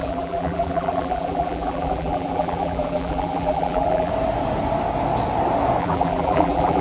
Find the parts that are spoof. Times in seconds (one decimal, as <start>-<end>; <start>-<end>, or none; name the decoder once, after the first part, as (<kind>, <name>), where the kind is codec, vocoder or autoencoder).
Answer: 0.0-4.1 (vocoder, BigVGAN v2); 5.8-6.8